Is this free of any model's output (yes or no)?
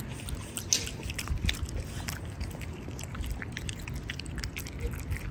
yes